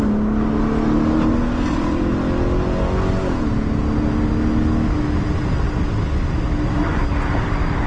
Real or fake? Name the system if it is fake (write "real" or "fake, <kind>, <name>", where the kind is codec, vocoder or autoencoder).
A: real